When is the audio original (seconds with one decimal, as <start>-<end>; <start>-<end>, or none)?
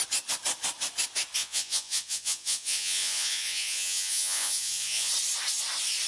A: 0.0-1.4; 5.1-6.1